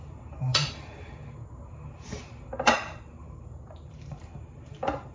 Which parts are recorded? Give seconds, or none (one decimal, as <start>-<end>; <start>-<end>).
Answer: none